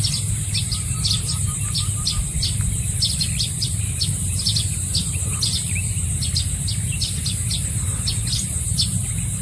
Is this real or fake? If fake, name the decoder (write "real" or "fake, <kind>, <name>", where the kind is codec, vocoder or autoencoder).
real